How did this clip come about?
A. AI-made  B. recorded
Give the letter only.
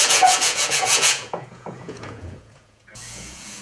A